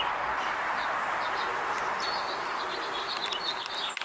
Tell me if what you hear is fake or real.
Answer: real